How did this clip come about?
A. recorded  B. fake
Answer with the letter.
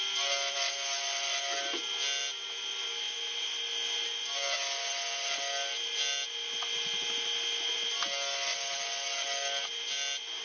A